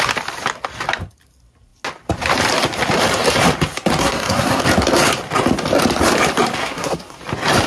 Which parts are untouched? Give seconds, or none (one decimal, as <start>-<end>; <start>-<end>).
0.0-4.0; 4.6-6.6; 7.2-7.7

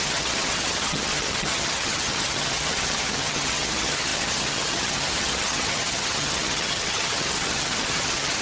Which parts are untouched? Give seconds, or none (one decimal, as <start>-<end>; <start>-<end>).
none

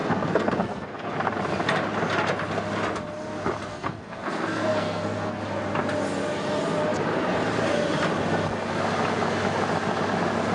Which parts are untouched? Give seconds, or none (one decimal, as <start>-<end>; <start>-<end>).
1.1-3.7; 5.4-10.5

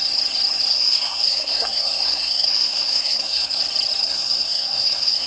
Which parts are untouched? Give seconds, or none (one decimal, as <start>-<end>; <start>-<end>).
0.0-0.7; 3.6-4.0

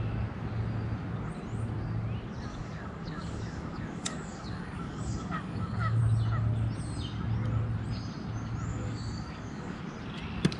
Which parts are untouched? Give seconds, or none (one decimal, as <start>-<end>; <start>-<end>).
0.0-2.5; 6.0-8.7; 9.8-10.6